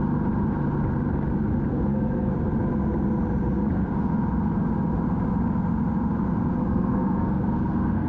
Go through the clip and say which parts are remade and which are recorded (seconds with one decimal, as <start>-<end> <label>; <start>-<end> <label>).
0.0-1.7 recorded; 1.7-2.3 remade; 2.3-6.6 recorded; 6.6-8.1 remade